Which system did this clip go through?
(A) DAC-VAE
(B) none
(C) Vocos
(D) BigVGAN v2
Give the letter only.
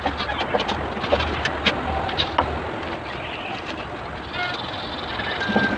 B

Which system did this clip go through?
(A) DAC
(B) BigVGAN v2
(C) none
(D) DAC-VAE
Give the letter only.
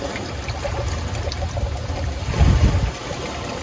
C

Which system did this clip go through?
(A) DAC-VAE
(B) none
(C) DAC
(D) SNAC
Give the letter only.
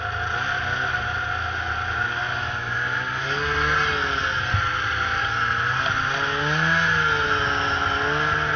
B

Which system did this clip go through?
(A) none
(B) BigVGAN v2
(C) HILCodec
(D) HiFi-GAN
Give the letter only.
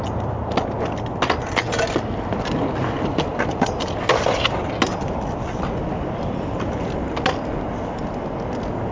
A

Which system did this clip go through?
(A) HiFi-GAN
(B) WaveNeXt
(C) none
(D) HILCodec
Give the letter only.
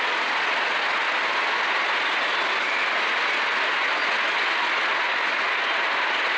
C